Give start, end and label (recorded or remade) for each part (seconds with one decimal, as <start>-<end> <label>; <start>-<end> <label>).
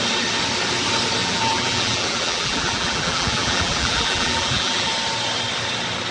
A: 0.0-1.2 recorded; 1.2-4.9 remade; 4.9-6.1 recorded